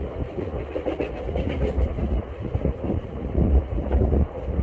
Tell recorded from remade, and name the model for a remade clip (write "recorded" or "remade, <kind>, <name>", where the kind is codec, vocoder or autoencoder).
remade, vocoder, Vocos